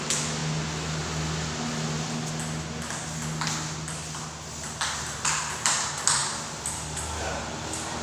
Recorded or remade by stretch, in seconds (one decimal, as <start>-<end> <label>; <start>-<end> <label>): 0.0-0.4 remade; 0.4-5.0 recorded; 5.0-8.0 remade